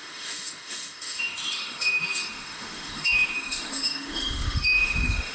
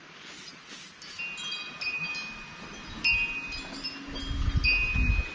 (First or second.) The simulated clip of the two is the first